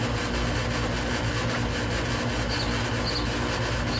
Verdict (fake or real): real